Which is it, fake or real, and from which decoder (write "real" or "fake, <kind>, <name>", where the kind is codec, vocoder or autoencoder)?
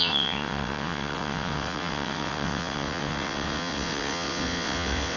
fake, vocoder, WaveNeXt